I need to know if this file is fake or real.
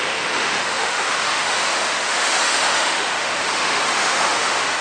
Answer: fake